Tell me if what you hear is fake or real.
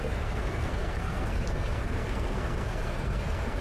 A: fake